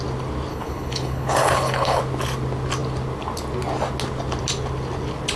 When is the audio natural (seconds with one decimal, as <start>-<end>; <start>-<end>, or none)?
0.0-0.5; 2.0-5.4

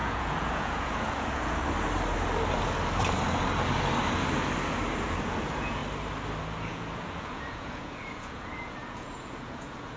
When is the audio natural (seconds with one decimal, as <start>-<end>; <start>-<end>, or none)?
1.6-5.0; 5.8-6.4

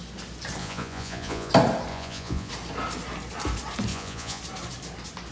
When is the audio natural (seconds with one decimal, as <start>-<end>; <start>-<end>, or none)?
0.0-0.6; 1.5-1.9; 2.5-3.9; 4.4-5.3

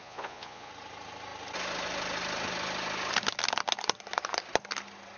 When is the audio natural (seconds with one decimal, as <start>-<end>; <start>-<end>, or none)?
0.7-5.2

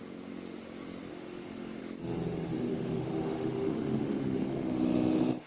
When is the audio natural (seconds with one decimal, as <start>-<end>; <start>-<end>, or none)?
0.0-1.1; 1.8-2.7

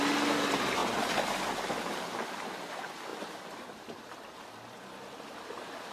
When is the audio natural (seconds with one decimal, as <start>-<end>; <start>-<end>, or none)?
0.0-5.9

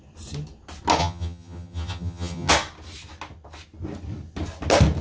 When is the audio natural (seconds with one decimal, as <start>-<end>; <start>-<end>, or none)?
0.0-1.0; 2.5-5.0

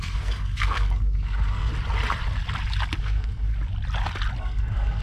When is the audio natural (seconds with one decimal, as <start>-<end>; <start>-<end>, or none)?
1.7-3.0; 3.5-4.4